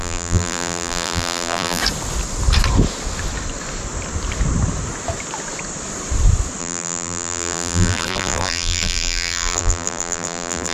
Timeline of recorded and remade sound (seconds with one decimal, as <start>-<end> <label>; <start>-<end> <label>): 0.0-1.8 remade; 1.8-6.6 recorded; 6.6-10.7 remade